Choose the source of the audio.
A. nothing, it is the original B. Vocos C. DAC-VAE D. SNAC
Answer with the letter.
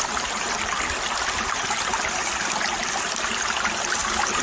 A